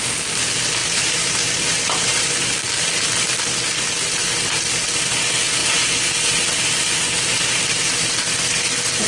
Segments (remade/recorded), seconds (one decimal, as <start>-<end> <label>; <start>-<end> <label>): 0.0-0.8 recorded; 0.8-3.4 remade; 3.4-9.1 recorded